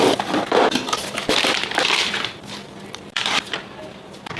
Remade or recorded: remade